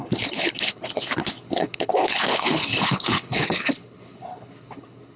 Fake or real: fake